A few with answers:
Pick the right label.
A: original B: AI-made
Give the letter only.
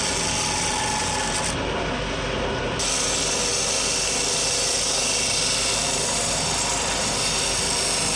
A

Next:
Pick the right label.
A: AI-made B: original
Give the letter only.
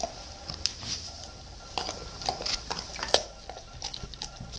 B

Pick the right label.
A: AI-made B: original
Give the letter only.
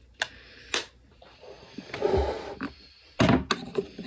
B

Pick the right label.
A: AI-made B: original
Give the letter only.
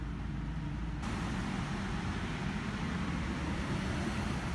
B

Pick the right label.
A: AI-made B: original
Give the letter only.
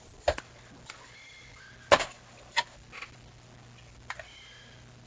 B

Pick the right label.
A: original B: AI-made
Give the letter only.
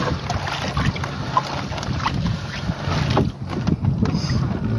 A